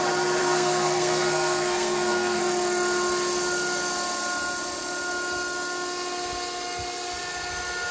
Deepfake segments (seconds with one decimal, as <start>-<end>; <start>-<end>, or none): 0.4-2.4